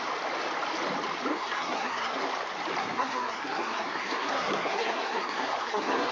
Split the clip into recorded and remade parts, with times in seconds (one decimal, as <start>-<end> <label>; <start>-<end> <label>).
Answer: 0.0-1.3 recorded; 1.3-2.2 remade; 2.2-2.8 recorded; 2.8-6.1 remade